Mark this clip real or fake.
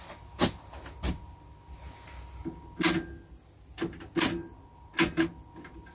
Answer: real